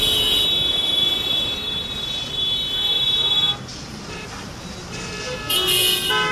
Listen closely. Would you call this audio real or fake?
real